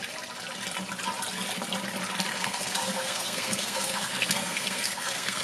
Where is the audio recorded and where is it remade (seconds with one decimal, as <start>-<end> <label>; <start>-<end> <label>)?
0.0-2.3 recorded; 2.3-5.4 remade